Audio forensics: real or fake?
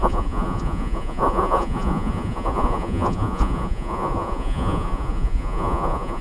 fake